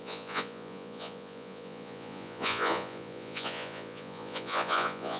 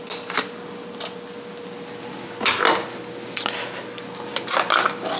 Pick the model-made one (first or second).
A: first